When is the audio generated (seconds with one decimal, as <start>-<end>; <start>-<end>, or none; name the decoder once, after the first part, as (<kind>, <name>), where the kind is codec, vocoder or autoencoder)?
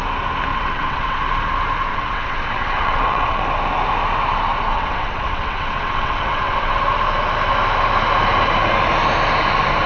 0.5-1.2 (vocoder, WaveNeXt); 1.9-3.4; 4.7-6.8